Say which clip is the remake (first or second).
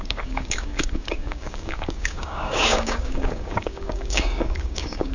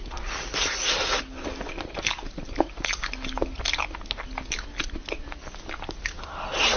first